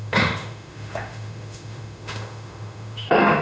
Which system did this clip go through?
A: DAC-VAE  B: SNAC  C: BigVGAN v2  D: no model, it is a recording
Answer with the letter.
A